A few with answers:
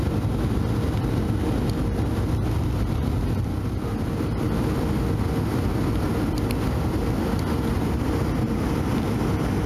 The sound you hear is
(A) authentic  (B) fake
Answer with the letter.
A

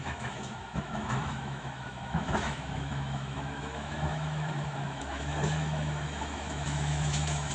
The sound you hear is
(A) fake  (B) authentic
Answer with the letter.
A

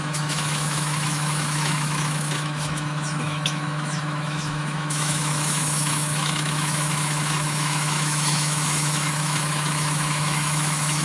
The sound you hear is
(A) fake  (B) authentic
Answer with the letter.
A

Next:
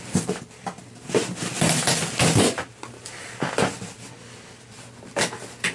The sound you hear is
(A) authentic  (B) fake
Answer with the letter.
A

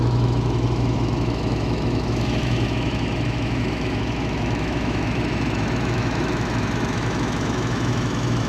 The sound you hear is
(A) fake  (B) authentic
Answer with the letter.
A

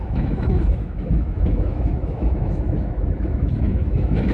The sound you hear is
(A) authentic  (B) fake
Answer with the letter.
B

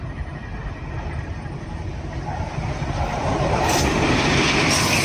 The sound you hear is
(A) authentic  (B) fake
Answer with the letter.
A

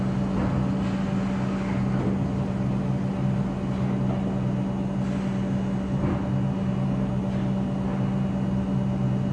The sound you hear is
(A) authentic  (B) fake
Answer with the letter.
A